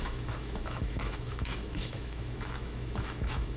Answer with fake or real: fake